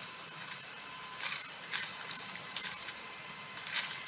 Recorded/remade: remade